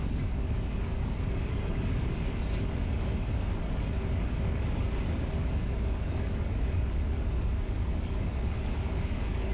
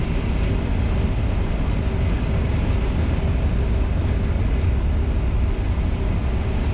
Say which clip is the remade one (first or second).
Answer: first